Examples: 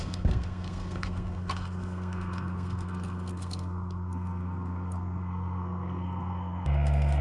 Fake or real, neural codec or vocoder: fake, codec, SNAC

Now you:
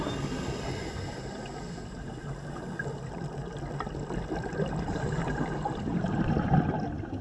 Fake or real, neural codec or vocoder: real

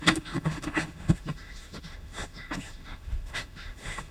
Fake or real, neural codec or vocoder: fake, autoencoder, DAC-VAE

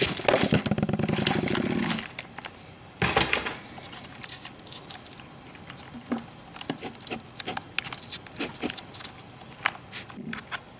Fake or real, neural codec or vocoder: real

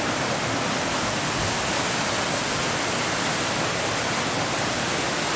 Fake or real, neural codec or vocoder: real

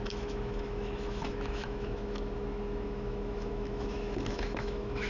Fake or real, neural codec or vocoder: fake, autoencoder, DAC-VAE